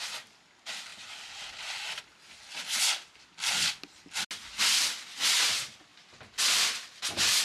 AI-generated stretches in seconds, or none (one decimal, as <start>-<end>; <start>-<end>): none